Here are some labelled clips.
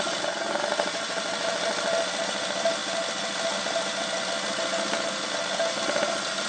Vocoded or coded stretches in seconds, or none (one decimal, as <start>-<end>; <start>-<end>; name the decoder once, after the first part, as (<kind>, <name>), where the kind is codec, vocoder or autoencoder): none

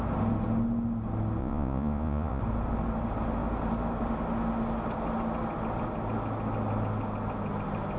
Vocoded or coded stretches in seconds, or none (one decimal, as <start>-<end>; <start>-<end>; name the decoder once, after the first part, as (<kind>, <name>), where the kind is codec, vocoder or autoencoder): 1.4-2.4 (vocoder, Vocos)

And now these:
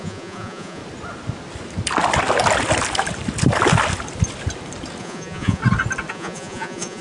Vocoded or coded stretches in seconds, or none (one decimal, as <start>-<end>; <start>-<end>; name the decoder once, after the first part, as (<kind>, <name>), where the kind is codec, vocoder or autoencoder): 0.0-0.8 (vocoder, Vocos); 5.0-5.6; 6.1-7.0

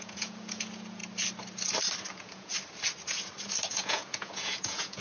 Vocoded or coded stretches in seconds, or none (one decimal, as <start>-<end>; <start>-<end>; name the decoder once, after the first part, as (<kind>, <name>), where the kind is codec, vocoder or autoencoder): 0.0-1.0 (vocoder, Vocos); 2.1-2.5; 3.7-5.0